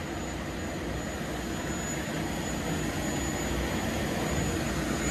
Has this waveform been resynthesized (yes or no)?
no